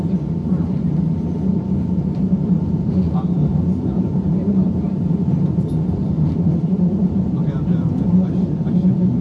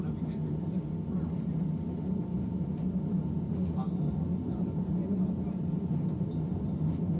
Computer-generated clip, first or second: first